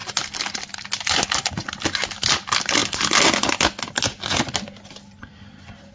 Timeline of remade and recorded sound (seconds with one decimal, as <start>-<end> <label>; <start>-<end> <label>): 0.0-5.9 recorded